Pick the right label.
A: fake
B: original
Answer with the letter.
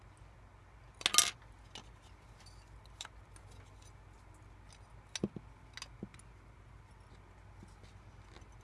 B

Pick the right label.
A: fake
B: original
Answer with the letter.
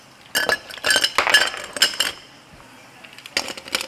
B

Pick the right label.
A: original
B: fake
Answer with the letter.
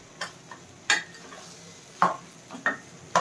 A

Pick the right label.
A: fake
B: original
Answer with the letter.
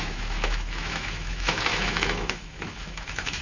A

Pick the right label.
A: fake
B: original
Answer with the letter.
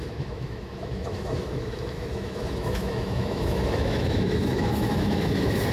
A